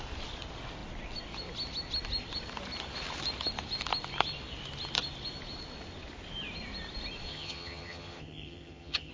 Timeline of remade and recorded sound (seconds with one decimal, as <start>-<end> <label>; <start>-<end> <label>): 0.0-7.3 recorded; 7.3-9.1 remade